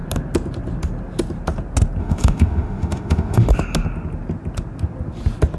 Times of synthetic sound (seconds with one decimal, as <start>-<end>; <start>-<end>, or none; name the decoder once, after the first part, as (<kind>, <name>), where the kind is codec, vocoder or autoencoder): 2.0-3.5 (autoencoder, DAC-VAE)